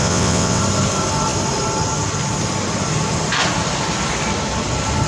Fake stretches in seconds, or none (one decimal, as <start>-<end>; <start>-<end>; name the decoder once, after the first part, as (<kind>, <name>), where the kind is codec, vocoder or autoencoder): 0.0-0.6 (vocoder, WaveNeXt)

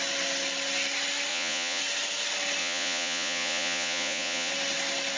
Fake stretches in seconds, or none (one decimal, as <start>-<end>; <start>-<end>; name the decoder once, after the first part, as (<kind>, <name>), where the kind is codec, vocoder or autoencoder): 1.3-1.8 (vocoder, Vocos); 2.6-4.5

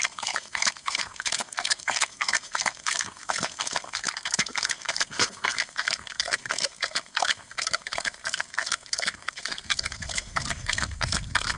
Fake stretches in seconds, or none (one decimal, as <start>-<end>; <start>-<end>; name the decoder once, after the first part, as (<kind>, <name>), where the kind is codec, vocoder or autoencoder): 0.0-11.6 (codec, SNAC)

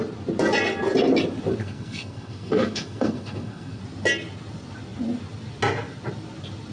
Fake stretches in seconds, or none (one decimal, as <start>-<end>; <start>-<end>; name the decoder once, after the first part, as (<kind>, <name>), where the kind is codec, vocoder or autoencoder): 1.6-3.8 (codec, SNAC)

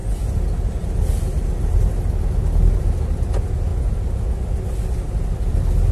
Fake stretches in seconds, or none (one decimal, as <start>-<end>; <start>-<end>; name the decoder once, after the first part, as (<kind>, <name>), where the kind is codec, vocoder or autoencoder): none

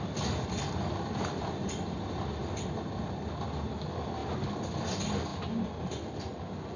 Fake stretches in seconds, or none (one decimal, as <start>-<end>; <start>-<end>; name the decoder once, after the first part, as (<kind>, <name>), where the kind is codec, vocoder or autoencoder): none

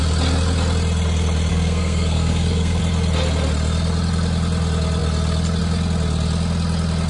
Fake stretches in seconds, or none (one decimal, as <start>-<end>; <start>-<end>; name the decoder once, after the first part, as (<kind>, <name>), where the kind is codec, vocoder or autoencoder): 1.5-2.8 (codec, SNAC)

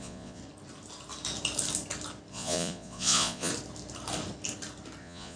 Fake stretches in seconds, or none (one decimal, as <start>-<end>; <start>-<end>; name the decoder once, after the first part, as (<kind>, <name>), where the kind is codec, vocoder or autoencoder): 0.0-0.4 (vocoder, Vocos); 2.3-3.5; 5.0-5.4